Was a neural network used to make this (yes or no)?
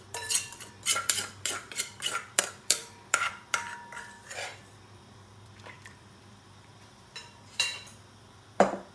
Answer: yes